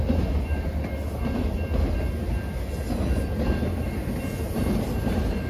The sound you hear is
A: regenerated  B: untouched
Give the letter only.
B